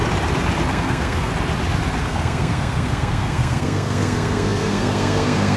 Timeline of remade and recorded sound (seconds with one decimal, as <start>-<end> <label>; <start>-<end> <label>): 0.0-0.7 recorded; 0.7-1.3 remade; 1.3-2.0 recorded; 2.0-5.6 remade